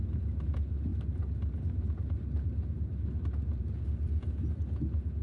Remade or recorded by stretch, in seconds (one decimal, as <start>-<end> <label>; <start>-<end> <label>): 0.0-5.2 recorded